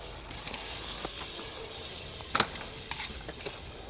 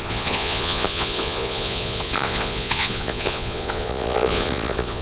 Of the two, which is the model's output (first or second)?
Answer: second